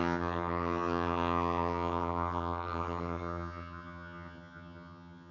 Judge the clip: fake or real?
fake